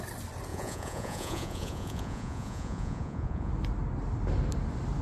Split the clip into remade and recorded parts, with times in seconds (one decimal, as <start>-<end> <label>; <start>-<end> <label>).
0.0-0.5 recorded; 0.5-3.5 remade; 3.5-5.0 recorded